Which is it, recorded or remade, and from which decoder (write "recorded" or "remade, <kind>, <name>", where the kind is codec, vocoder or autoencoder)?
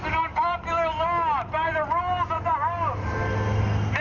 recorded